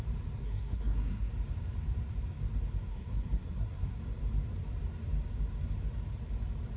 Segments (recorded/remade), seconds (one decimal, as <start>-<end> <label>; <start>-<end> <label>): 0.0-0.4 recorded; 0.4-1.3 remade; 1.3-2.9 recorded; 2.9-4.0 remade; 4.0-6.8 recorded